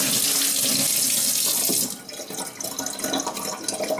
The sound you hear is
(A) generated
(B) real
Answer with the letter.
B